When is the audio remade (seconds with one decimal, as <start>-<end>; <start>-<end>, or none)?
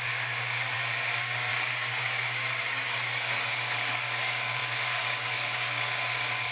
0.0-1.5; 2.0-6.5